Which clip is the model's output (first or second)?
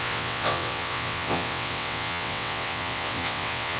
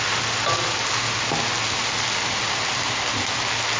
first